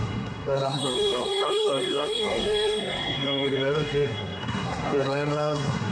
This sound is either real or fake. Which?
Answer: fake